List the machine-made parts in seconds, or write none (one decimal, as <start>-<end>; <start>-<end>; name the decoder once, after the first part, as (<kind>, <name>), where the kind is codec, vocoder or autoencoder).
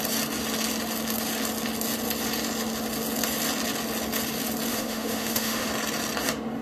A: 4.7-5.7 (autoencoder, DAC-VAE)